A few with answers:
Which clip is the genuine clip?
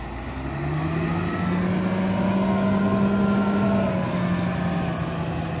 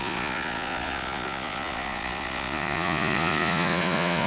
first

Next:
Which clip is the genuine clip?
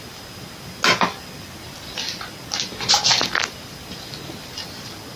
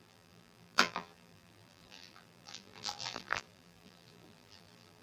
first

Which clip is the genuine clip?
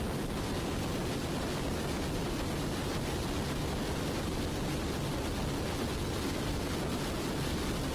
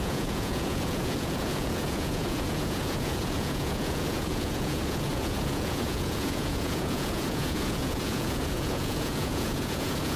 first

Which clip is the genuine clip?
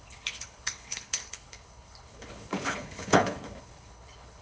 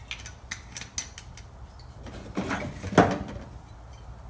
second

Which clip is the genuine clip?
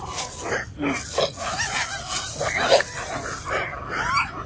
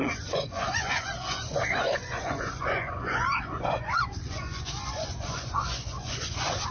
first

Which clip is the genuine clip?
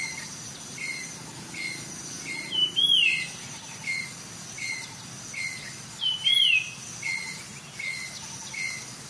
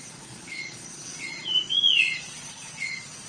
first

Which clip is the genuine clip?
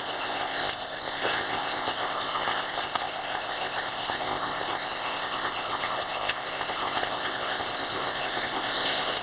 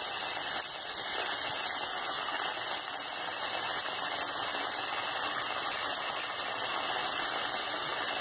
second